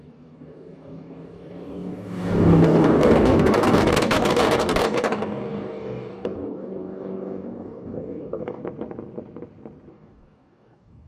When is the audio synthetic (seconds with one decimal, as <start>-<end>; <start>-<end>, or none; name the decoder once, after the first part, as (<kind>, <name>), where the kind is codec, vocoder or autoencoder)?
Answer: 0.0-8.6 (codec, DAC); 9.9-11.1